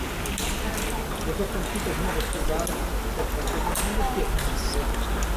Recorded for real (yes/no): yes